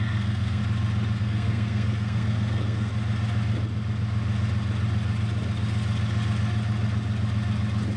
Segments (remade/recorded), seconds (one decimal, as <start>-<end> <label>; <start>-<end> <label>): 0.0-0.6 remade; 0.6-1.2 recorded; 1.2-2.9 remade; 2.9-8.0 recorded